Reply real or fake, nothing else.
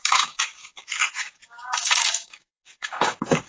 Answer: fake